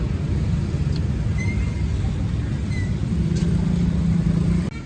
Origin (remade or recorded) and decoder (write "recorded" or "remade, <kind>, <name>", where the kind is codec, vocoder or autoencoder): recorded